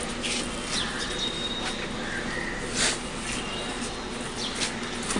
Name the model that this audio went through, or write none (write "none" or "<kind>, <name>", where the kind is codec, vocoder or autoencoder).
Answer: none